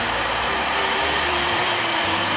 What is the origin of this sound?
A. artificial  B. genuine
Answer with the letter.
A